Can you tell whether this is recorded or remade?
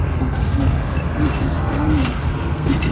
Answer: remade